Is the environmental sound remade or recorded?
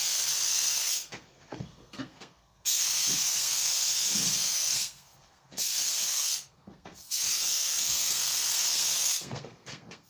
remade